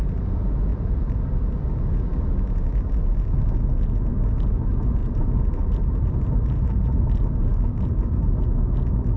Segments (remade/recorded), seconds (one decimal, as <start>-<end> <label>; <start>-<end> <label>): 0.0-0.7 recorded; 0.7-1.2 remade; 1.2-5.0 recorded; 5.0-8.3 remade; 8.3-9.2 recorded